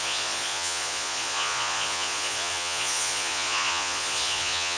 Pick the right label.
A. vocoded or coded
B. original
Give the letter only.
A